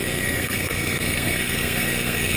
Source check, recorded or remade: remade